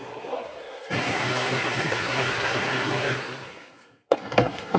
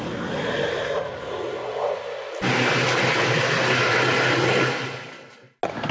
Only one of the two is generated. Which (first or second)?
first